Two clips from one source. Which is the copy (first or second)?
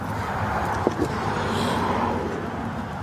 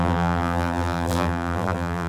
second